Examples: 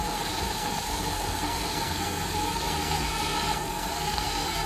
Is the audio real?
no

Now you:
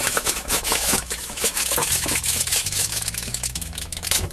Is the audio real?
no